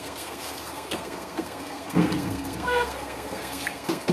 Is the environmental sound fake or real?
fake